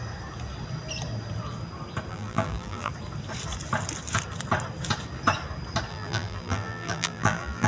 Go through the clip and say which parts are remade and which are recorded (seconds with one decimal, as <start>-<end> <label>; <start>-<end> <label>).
0.0-2.1 recorded; 2.1-2.9 remade; 2.9-5.9 recorded; 5.9-7.7 remade